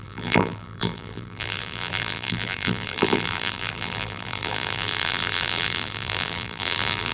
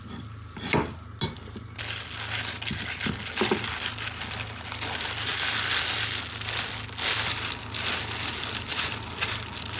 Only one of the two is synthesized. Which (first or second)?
first